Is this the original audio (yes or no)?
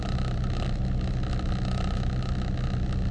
yes